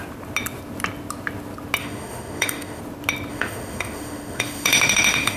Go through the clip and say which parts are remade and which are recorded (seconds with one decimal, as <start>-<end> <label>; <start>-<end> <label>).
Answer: 0.0-1.8 recorded; 1.8-2.8 remade; 2.8-3.3 recorded; 3.3-5.4 remade